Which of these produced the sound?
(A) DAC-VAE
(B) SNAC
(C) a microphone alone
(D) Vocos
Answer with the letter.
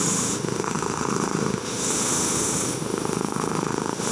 A